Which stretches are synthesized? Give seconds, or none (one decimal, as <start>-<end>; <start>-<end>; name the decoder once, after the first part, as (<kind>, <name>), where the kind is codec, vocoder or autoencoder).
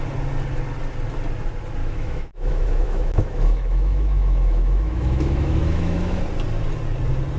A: 1.8-6.2 (autoencoder, DAC-VAE)